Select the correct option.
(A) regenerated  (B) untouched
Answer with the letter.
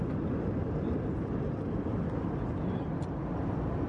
B